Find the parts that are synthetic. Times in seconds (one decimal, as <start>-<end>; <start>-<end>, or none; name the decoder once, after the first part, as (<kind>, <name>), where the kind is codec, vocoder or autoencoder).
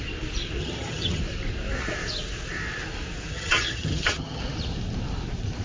0.6-1.2 (vocoder, HiFi-GAN); 3.3-4.4